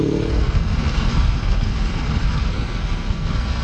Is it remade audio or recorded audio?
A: remade